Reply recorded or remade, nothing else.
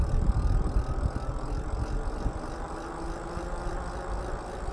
recorded